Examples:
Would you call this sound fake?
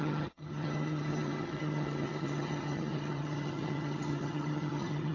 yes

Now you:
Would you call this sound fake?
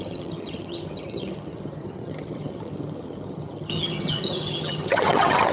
yes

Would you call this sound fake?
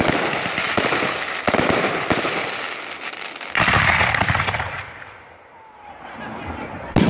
no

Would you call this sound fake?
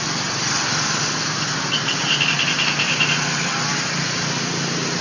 no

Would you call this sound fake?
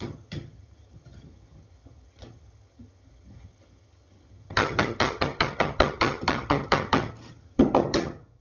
yes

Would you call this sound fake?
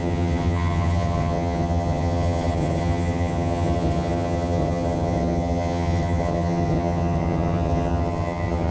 yes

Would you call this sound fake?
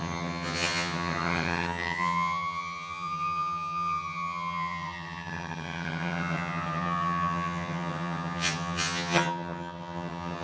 yes